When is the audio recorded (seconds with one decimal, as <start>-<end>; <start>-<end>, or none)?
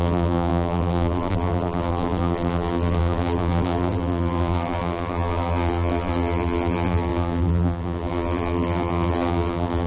none